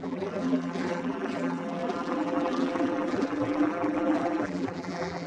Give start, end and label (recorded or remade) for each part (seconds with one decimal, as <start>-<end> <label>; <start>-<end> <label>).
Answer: 0.0-5.3 remade